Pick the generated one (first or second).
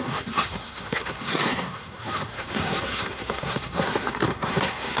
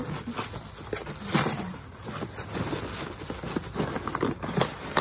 first